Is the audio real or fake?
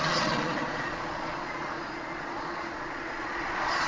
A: fake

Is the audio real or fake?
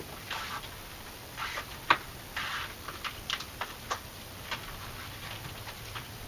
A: real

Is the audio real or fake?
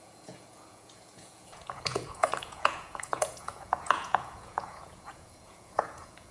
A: fake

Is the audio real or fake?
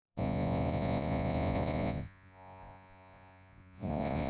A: fake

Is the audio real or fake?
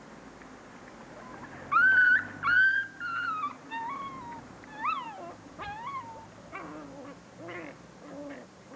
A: real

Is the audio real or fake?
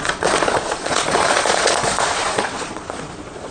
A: fake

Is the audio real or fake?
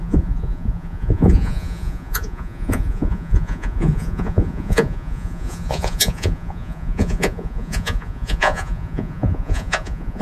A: fake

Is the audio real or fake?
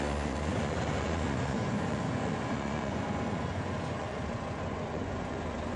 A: fake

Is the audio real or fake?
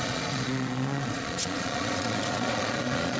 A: fake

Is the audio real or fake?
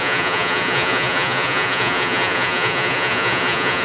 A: fake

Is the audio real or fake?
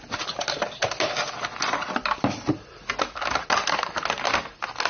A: real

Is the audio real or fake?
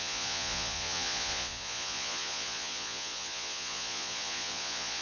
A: fake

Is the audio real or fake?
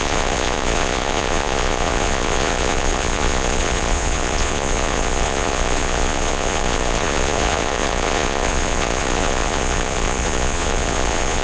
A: fake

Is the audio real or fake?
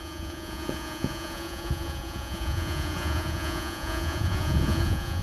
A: fake